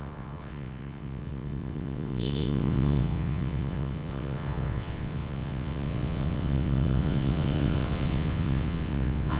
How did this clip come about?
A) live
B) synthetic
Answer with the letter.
B